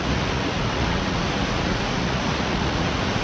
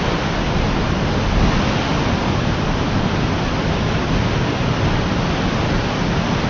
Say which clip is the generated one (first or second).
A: first